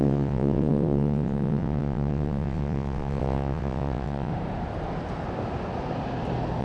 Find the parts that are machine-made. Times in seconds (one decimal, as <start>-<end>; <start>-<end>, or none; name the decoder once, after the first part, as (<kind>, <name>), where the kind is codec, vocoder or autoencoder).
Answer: 0.0-4.3 (vocoder, WaveNeXt)